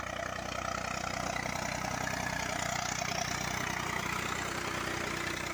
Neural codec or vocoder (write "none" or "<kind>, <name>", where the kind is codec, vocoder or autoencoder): none